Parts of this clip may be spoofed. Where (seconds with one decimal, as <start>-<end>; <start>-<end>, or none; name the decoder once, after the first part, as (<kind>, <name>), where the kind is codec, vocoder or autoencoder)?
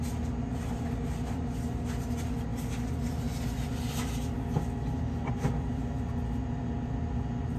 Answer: none